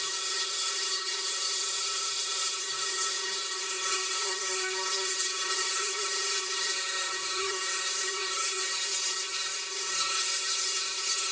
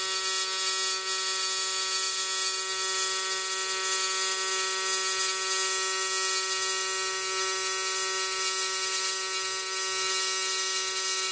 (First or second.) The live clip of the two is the second